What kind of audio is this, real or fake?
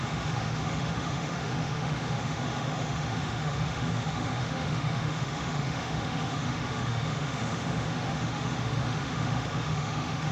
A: fake